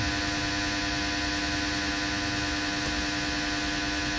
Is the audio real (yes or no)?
yes